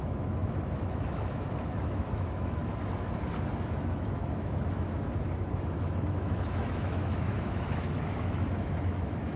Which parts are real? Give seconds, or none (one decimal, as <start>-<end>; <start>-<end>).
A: 2.6-3.6